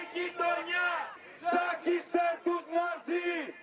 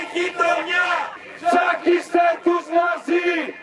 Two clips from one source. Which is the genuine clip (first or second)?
first